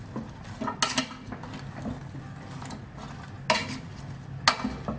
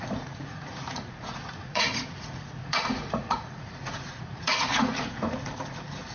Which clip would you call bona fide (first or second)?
first